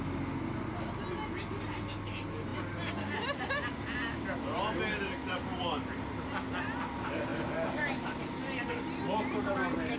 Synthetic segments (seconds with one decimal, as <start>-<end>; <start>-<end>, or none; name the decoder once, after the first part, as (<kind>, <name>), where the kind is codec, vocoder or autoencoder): none